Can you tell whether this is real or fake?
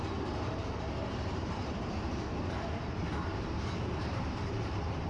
fake